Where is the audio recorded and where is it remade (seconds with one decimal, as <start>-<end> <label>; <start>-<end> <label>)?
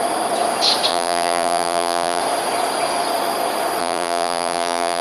0.0-0.9 recorded; 0.9-2.2 remade; 2.2-3.8 recorded; 3.8-5.0 remade